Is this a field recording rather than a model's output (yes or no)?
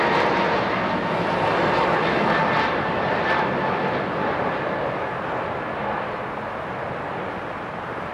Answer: yes